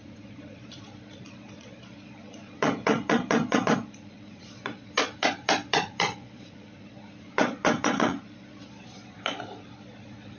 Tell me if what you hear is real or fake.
fake